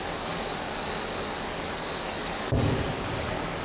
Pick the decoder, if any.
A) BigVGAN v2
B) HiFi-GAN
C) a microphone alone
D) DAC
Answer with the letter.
D